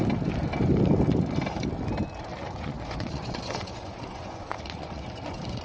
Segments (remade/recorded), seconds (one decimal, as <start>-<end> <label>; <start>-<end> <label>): 0.0-2.3 recorded; 2.3-5.6 remade